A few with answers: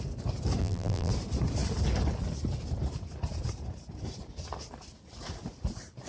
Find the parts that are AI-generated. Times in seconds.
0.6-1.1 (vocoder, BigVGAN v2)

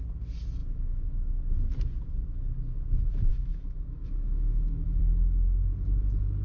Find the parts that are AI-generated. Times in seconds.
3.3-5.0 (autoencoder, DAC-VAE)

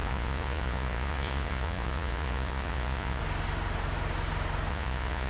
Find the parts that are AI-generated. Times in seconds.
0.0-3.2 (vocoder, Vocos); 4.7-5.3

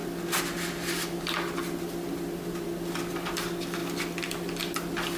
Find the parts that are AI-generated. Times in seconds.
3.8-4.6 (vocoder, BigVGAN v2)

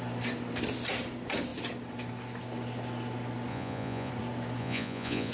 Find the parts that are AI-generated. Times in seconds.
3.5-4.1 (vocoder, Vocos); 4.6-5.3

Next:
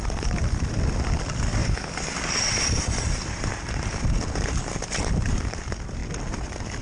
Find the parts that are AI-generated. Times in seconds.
0.0-6.0 (vocoder, BigVGAN v2)